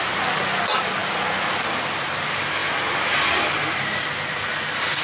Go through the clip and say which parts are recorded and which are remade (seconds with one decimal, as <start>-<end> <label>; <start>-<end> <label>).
0.0-5.0 recorded